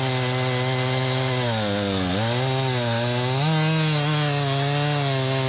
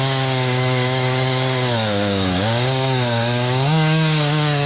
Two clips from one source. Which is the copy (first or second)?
second